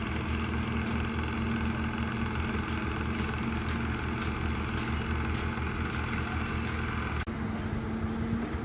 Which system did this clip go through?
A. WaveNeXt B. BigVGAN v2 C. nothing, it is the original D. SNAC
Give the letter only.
C